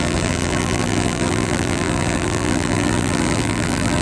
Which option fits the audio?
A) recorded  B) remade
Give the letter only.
B